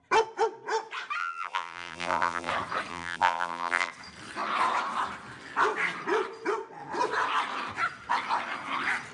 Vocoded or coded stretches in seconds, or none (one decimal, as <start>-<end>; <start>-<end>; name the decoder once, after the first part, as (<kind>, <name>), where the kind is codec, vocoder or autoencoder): 1.2-2.5 (vocoder, BigVGAN v2); 2.9-3.9